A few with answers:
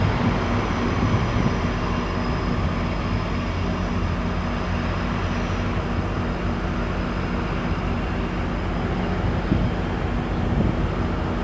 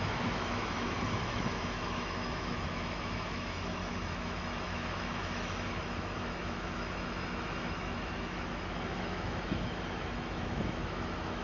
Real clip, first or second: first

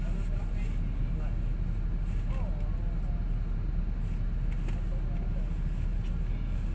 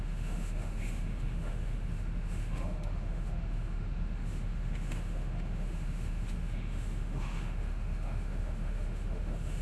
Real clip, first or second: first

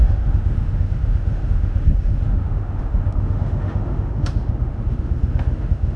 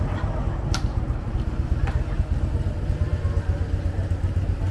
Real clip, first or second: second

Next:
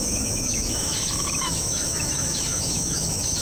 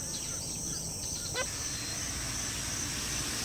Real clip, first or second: second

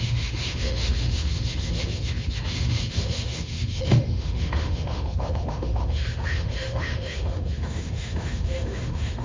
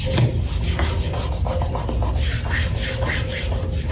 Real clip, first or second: second